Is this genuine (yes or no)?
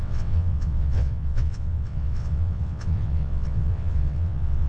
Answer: no